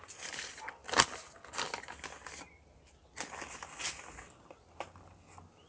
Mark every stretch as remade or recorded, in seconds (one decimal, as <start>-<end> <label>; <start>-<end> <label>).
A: 0.0-5.7 recorded